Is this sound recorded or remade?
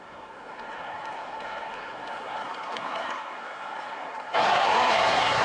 remade